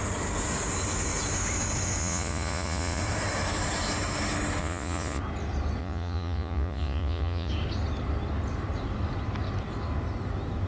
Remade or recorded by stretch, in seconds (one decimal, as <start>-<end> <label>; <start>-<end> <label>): 0.0-2.0 recorded; 2.0-3.0 remade; 3.0-4.6 recorded; 4.6-5.2 remade; 5.2-5.8 recorded; 5.8-7.5 remade; 7.5-10.7 recorded